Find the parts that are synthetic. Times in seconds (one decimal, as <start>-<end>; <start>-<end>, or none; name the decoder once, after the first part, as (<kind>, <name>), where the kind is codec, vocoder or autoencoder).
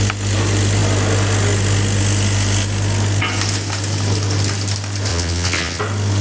5.1-5.8 (vocoder, Vocos)